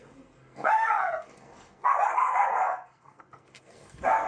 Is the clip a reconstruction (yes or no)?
yes